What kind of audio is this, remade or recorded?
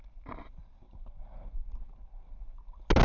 recorded